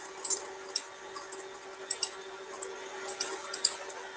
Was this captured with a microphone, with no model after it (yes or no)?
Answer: yes